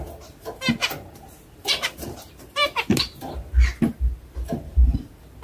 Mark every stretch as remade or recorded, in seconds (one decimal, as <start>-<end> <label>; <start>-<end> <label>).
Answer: 0.0-5.4 recorded